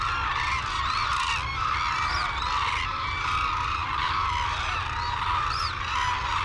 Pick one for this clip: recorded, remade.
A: recorded